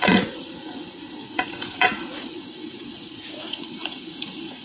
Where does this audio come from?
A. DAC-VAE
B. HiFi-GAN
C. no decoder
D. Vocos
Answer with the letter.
D